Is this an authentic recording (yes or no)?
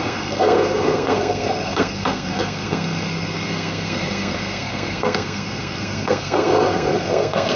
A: no